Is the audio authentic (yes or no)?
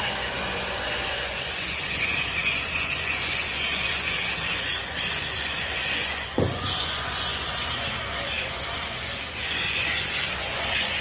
no